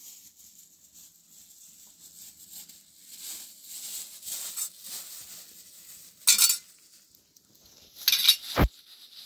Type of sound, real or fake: real